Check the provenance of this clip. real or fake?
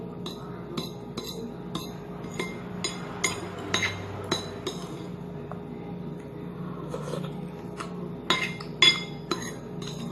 real